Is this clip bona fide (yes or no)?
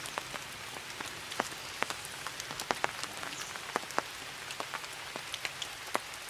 yes